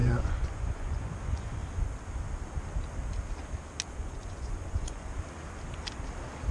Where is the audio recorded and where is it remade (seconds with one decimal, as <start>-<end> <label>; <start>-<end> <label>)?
0.0-1.6 remade; 1.6-3.9 recorded; 3.9-5.1 remade; 5.1-6.5 recorded